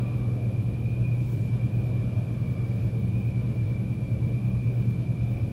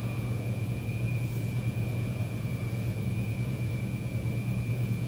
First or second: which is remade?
second